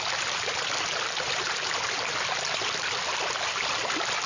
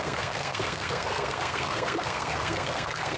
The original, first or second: first